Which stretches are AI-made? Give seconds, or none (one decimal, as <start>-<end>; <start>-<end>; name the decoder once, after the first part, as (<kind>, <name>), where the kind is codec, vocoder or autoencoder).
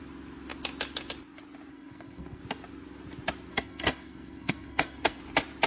1.7-2.4 (codec, SNAC); 3.5-5.2